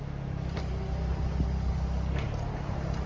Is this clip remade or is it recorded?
recorded